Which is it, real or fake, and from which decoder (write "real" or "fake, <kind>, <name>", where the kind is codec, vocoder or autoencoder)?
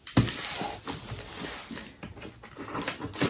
real